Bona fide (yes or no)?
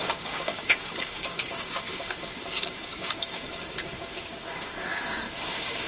no